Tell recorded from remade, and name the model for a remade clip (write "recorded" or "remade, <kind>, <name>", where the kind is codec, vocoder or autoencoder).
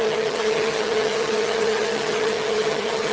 remade, vocoder, HiFi-GAN